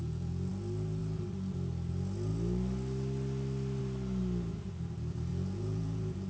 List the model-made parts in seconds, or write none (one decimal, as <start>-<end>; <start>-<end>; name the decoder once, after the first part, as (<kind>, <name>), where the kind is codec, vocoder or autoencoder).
0.0-0.5 (vocoder, Vocos); 5.3-6.3